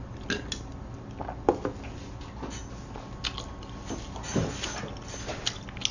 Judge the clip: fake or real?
real